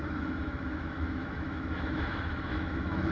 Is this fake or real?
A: fake